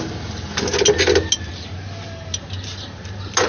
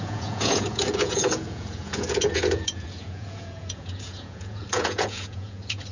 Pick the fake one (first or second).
second